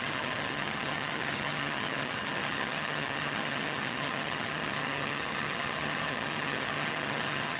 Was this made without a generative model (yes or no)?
no